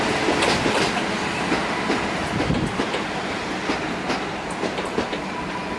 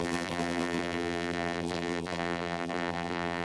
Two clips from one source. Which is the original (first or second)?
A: first